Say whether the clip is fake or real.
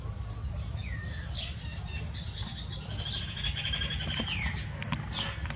real